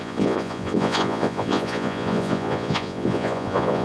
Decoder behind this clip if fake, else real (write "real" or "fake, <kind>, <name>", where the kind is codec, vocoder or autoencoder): fake, vocoder, Vocos